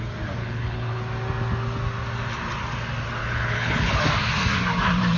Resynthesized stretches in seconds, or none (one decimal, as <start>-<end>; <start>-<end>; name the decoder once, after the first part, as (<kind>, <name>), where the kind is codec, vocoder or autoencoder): 0.4-1.0 (codec, HILCodec); 3.2-4.0